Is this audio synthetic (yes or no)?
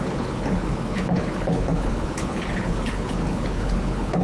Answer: yes